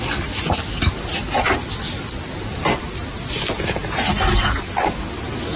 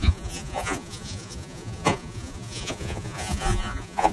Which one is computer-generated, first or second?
second